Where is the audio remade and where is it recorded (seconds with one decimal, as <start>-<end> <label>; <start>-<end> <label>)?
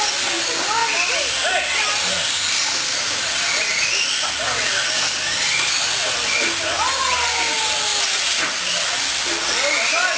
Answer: 0.0-10.2 recorded